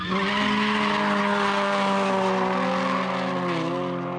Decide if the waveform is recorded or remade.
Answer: recorded